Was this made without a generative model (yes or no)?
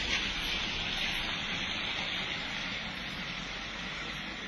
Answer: yes